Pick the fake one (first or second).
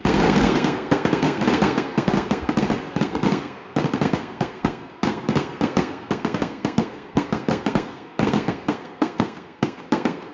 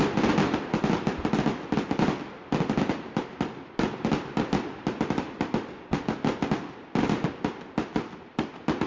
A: first